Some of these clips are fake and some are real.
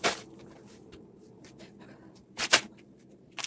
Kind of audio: fake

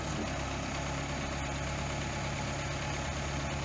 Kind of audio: real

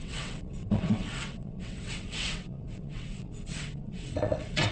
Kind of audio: fake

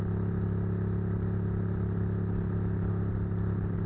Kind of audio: real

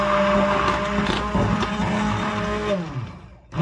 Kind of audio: real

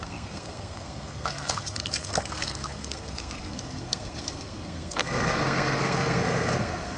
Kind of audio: fake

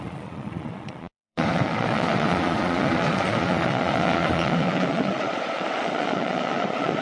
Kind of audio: fake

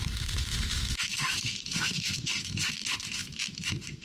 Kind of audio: fake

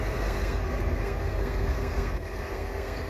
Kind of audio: fake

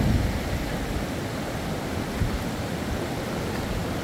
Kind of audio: real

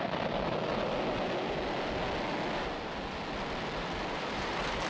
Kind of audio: real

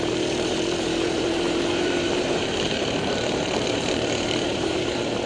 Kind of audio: fake